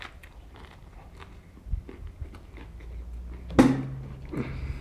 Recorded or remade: recorded